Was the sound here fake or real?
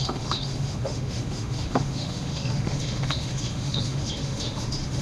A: fake